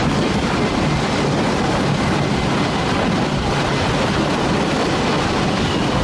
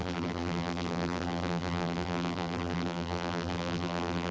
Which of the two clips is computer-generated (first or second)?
second